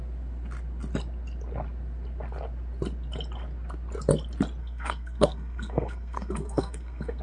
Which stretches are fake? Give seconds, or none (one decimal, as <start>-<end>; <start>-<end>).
4.6-7.2